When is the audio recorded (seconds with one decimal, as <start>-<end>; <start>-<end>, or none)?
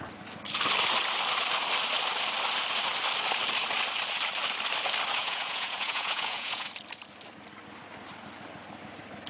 0.0-5.2; 6.7-9.3